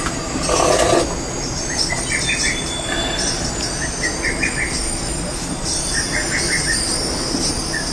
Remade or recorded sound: recorded